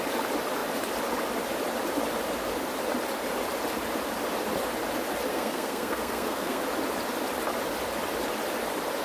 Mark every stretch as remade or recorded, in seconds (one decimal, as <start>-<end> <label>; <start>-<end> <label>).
0.0-5.3 recorded; 5.3-6.6 remade; 6.6-9.0 recorded